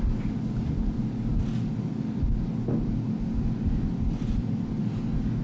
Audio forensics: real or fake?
real